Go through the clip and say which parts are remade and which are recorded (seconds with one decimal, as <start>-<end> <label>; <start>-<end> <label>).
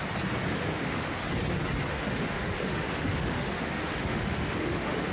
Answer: 0.0-0.5 recorded; 0.5-1.2 remade; 1.2-1.9 recorded; 1.9-5.1 remade